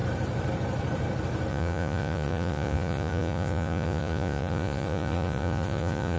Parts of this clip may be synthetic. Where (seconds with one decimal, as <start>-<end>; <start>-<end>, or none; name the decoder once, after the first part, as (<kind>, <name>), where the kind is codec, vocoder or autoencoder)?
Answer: 1.5-6.2 (vocoder, Vocos)